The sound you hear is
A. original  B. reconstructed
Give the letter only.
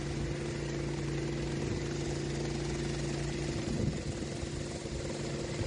A